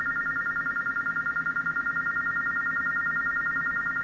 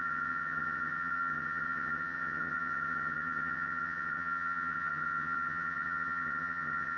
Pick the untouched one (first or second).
first